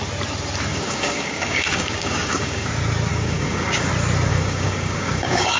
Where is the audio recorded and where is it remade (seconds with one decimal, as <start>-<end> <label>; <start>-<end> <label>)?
0.0-0.7 recorded; 0.7-2.7 remade; 2.7-3.1 recorded; 3.1-3.9 remade; 3.9-4.3 recorded; 4.3-5.6 remade